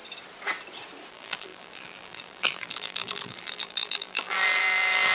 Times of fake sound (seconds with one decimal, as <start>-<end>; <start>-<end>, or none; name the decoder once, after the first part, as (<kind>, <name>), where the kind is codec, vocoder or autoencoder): 1.1-5.1 (vocoder, BigVGAN v2)